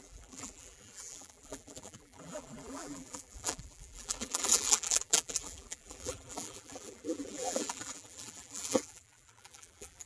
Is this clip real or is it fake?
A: fake